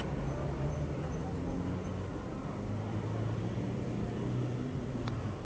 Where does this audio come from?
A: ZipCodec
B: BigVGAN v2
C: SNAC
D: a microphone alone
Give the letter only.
B